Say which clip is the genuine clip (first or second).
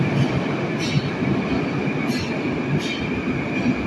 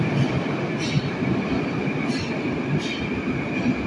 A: first